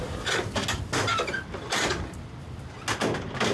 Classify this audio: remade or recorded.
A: recorded